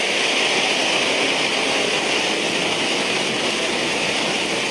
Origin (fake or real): real